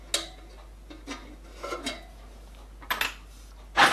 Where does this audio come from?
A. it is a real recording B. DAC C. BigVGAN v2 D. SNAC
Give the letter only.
A